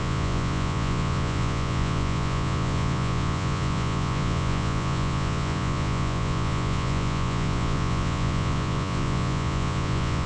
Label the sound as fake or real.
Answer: fake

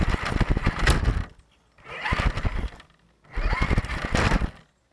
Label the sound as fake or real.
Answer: real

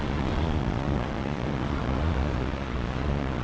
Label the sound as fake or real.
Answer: fake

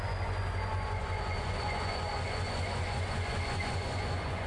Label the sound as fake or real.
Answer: fake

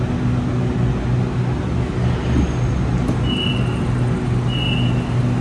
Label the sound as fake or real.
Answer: real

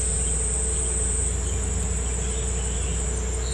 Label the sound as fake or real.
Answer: real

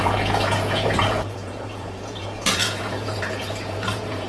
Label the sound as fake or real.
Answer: fake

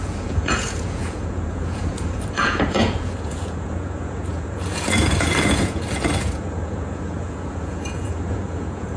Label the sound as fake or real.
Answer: fake